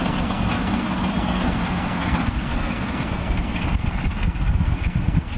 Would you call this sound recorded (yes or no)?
no